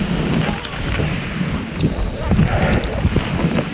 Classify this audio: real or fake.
real